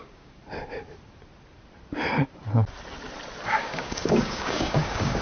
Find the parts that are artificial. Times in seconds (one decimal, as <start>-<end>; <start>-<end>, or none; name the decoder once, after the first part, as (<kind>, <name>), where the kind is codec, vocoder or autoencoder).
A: 0.0-0.4 (codec, DAC); 3.5-5.2